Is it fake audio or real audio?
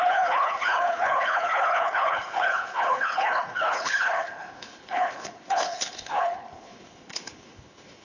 fake